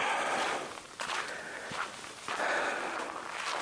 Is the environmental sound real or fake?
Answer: fake